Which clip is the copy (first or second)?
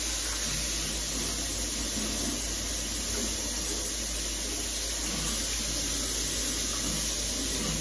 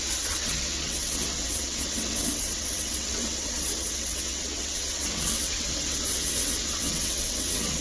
second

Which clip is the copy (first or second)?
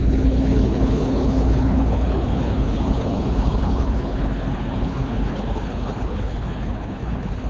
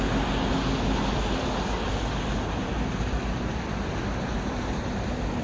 first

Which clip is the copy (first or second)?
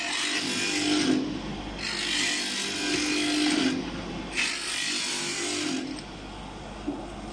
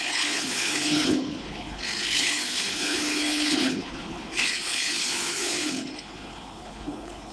second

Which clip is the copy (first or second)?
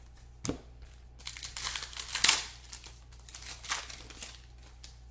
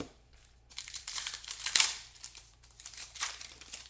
second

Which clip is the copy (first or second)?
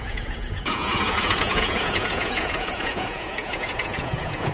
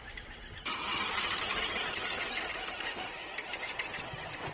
first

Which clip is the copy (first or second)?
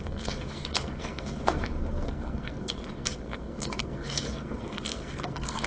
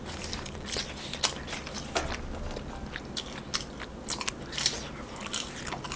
first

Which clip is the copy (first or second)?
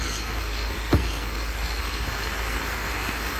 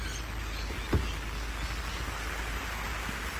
first